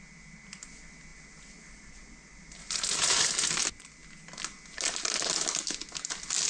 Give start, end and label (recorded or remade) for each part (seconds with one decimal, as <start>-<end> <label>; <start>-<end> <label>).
0.0-6.5 recorded